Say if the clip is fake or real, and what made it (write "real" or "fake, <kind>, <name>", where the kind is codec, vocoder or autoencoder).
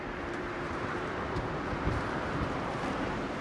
fake, vocoder, BigVGAN v2